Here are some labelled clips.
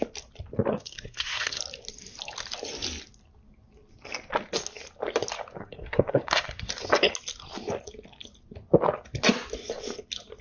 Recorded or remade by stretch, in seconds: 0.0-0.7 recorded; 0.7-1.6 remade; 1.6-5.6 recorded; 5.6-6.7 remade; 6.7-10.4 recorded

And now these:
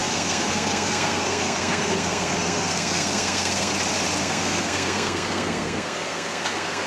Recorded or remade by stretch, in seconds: 0.0-3.7 remade; 3.7-4.2 recorded; 4.2-6.9 remade

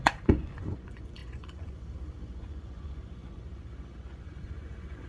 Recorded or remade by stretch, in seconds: 0.0-5.1 remade

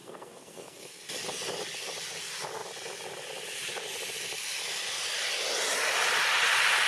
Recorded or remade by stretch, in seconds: 0.0-1.0 remade; 1.0-6.9 recorded

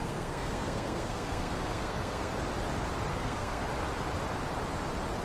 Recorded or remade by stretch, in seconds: 0.0-2.3 remade; 2.3-3.1 recorded; 3.1-3.6 remade; 3.6-5.2 recorded

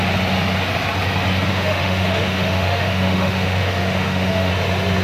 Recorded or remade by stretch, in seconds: 0.0-1.5 recorded; 1.5-4.5 remade; 4.5-5.0 recorded

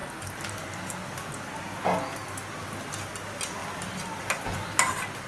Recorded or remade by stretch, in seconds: 0.0-5.3 recorded